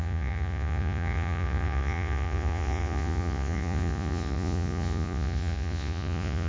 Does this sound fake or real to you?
fake